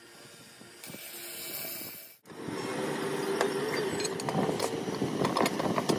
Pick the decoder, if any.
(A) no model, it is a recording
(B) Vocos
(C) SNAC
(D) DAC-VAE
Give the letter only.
A